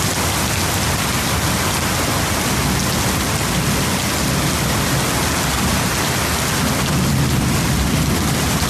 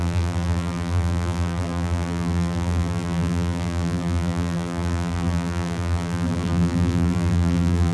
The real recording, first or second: first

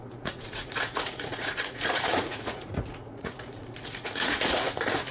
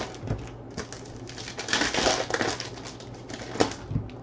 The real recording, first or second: second